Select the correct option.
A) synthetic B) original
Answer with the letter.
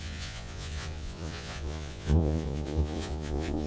A